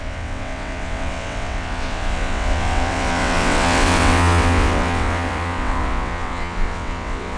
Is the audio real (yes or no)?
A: no